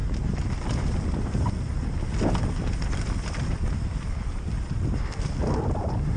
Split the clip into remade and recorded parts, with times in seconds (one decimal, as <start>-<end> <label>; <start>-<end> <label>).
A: 0.0-1.3 recorded; 1.3-6.2 remade